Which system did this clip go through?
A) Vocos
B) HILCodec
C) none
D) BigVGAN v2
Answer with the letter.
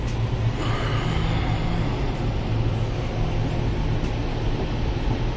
C